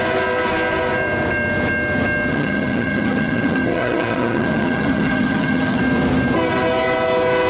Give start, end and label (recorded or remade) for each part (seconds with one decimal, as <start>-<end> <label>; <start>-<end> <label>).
0.0-2.3 recorded; 2.3-5.8 remade; 5.8-7.5 recorded